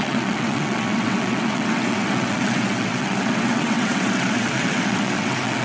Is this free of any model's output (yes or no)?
no